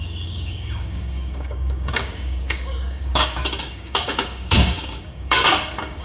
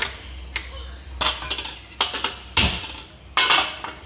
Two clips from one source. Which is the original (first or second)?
second